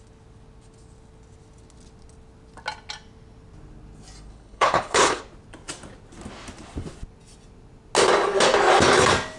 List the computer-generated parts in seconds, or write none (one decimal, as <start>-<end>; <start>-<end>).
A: 4.3-5.2